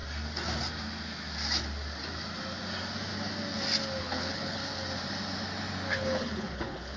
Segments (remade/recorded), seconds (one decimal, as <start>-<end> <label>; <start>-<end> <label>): 0.0-4.0 recorded; 4.0-4.6 remade; 4.6-5.9 recorded; 5.9-7.0 remade